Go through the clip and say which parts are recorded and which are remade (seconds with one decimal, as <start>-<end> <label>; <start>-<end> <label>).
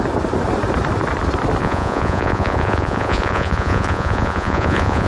0.0-1.6 recorded; 1.6-5.1 remade